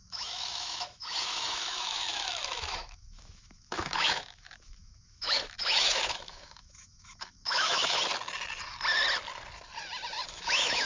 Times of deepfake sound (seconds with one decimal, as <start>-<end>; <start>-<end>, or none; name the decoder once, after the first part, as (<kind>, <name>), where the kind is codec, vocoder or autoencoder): 0.0-8.0 (autoencoder, DAC-VAE); 10.3-10.9